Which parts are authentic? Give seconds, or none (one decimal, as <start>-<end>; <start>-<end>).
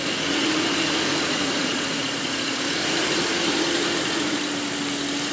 4.4-5.3